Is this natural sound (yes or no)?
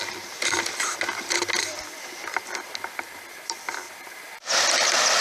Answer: yes